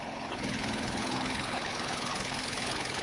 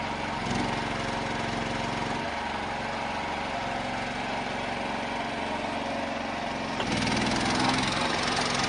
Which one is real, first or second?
second